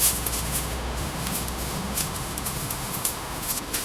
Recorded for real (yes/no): no